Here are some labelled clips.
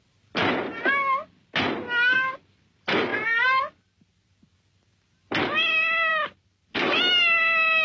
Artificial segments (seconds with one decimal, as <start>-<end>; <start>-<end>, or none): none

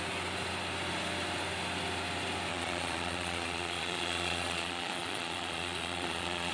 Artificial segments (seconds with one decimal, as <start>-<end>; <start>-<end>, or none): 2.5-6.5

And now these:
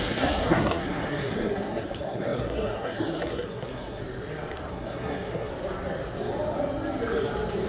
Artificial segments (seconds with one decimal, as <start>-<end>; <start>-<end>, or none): 0.0-4.0; 4.7-5.5

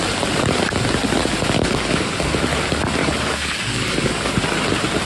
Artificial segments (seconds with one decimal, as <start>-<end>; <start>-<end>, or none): 1.6-2.2; 3.0-4.3